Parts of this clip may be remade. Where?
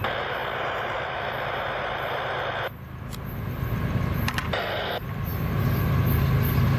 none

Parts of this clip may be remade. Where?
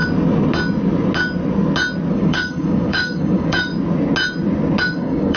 2.1-3.7; 4.8-5.4